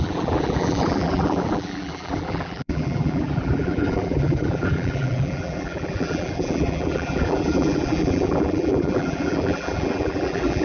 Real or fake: fake